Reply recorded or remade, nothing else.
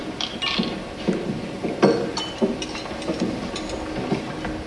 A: recorded